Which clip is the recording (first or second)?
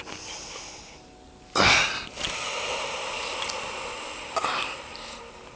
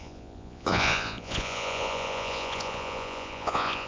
first